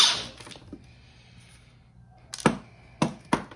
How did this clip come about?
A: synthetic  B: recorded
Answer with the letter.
B